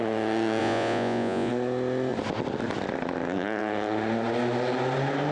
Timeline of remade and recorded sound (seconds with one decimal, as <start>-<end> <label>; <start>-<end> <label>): 0.0-0.6 recorded; 0.6-1.5 remade; 1.5-5.3 recorded